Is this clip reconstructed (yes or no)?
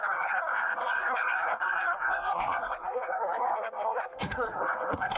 yes